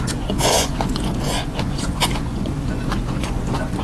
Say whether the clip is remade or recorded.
remade